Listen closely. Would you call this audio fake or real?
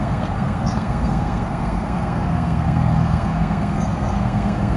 fake